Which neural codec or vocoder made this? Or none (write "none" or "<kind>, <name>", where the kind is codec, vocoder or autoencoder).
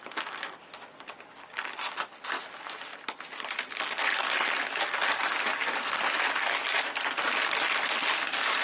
none